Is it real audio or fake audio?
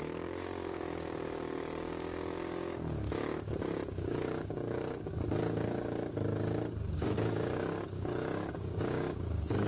fake